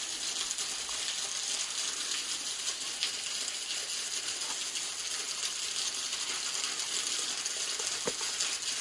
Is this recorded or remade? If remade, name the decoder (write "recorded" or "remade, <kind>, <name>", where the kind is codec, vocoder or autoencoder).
recorded